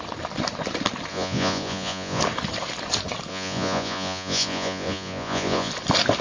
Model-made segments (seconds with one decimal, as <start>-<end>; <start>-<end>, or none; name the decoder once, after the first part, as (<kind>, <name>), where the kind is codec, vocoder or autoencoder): 1.1-2.2 (vocoder, Vocos); 3.3-5.7